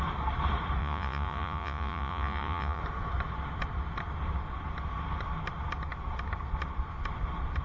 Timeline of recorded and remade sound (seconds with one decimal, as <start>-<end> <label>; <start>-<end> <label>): 0.0-0.8 recorded; 0.8-2.8 remade; 2.8-7.6 recorded